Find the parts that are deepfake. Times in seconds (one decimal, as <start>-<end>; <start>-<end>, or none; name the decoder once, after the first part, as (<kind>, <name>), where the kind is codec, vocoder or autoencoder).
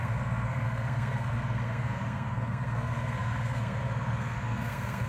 0.0-5.1 (codec, SNAC)